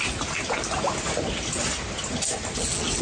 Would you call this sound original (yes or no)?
yes